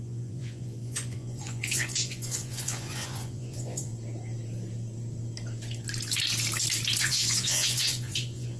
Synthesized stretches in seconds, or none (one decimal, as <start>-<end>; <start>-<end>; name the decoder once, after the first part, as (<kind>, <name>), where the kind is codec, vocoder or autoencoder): 0.0-3.9 (vocoder, Vocos); 7.0-8.6